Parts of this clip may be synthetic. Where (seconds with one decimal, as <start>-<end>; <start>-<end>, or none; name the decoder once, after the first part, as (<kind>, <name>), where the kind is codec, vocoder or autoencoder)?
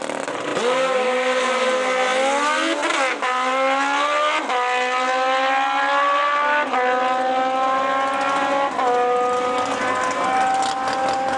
none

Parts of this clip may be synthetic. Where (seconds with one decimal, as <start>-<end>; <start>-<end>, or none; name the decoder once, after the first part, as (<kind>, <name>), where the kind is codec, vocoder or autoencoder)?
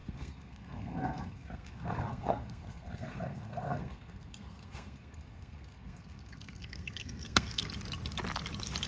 0.0-7.6 (codec, SNAC)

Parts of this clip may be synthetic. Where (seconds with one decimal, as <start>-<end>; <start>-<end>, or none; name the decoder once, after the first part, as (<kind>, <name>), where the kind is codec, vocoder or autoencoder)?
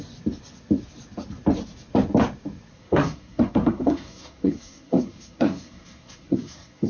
2.7-6.9 (codec, SNAC)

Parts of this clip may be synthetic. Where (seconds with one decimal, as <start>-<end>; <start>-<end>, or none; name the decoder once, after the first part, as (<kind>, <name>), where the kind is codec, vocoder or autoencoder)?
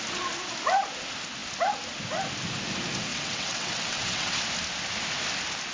3.1-4.4 (vocoder, WaveNeXt)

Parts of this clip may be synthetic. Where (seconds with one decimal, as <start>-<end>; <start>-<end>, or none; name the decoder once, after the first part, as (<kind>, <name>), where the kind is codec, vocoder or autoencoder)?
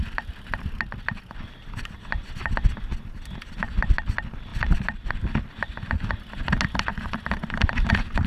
none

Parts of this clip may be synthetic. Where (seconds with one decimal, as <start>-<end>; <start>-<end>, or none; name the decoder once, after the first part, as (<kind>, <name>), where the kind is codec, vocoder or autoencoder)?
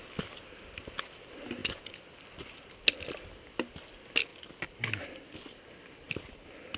none